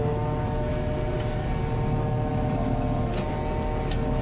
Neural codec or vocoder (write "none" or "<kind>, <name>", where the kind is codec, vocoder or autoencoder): none